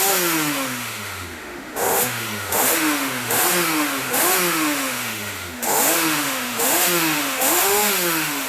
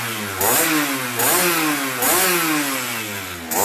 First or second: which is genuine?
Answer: second